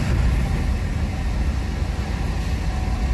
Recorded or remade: recorded